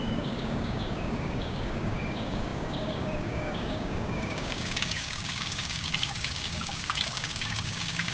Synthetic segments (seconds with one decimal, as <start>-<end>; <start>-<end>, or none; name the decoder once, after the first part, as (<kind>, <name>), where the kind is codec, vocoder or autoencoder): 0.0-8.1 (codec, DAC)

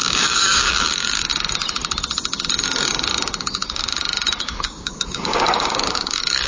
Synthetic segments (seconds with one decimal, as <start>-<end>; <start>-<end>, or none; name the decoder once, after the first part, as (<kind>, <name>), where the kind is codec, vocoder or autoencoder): 0.0-1.3 (codec, DAC); 3.4-3.8; 4.4-6.5

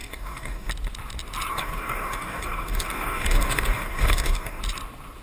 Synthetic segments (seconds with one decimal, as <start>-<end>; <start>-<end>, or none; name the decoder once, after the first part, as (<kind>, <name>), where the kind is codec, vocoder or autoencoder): 0.0-0.7 (codec, DAC); 1.5-4.6